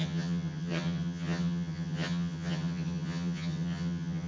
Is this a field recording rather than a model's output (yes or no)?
no